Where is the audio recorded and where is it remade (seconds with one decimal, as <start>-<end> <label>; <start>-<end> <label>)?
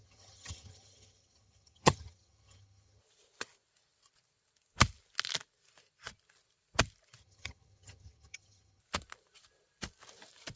0.0-3.0 remade; 3.0-7.2 recorded; 7.2-8.8 remade; 8.8-10.6 recorded